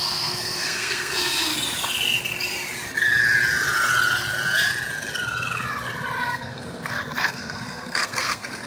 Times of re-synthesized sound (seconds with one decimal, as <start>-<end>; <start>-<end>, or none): 0.0-1.5; 6.2-8.7